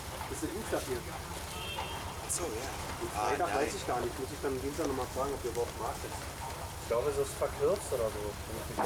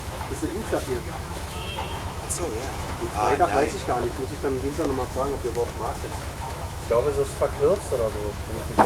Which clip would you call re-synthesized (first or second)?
second